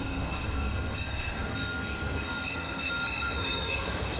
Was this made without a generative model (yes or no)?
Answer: no